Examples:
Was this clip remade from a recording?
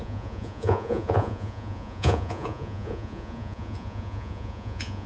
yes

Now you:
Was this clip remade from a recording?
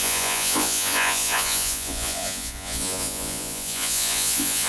yes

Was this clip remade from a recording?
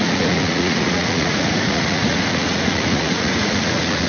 yes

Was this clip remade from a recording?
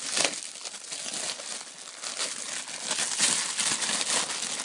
no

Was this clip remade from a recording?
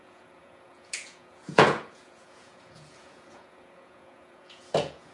yes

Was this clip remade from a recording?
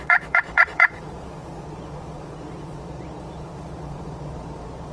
yes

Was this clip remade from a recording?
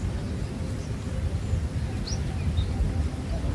no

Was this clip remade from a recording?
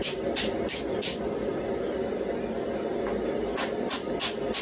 no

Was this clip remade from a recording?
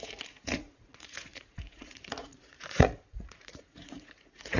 yes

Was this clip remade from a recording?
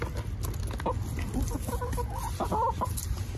no